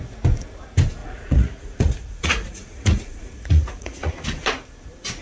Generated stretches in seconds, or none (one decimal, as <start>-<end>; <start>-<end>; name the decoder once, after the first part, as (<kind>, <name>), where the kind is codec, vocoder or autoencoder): 1.0-4.1 (vocoder, Vocos)